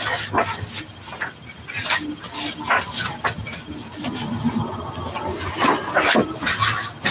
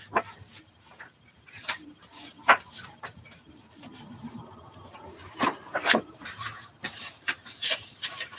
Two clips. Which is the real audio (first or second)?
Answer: first